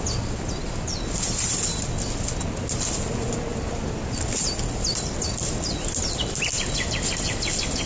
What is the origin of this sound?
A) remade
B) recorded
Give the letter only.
B